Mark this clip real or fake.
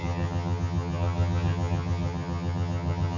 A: fake